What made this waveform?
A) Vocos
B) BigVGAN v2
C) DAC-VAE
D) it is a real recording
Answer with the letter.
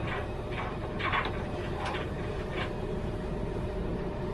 B